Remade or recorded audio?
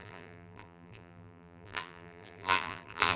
remade